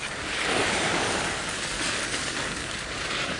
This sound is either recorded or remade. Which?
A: remade